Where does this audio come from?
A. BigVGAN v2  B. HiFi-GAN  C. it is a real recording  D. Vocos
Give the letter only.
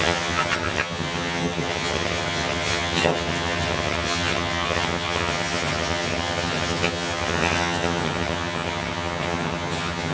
B